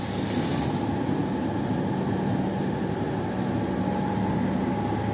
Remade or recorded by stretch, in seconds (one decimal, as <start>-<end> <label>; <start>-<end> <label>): 0.0-5.1 recorded